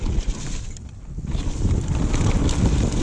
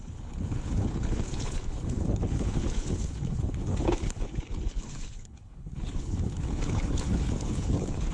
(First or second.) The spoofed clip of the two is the second